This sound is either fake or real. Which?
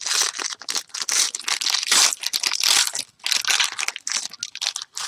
real